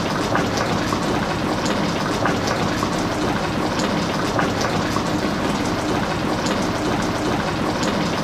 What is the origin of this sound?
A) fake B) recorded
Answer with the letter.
B